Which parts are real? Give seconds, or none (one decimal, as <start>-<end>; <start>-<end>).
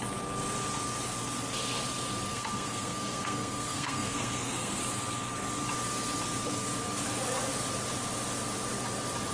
0.0-2.3; 4.8-9.3